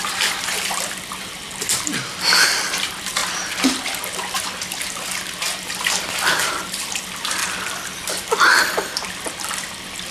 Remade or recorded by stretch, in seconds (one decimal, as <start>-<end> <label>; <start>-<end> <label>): 0.0-3.2 remade; 3.2-5.8 recorded; 5.8-7.4 remade; 7.4-9.5 recorded; 9.5-10.1 remade